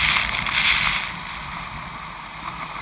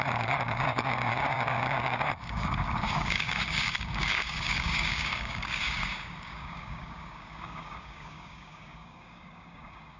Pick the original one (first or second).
first